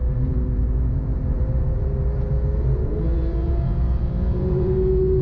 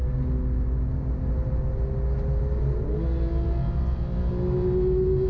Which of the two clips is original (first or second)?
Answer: second